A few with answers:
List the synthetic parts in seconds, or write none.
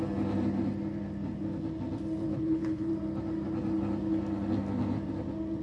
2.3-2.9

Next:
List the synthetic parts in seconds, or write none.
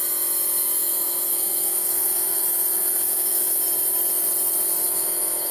0.8-3.6; 4.8-5.5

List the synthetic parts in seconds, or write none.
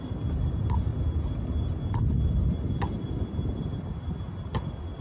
none